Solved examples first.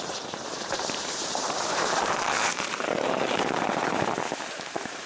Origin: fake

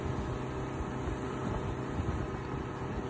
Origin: real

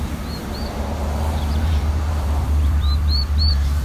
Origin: fake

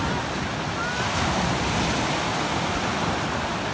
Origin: real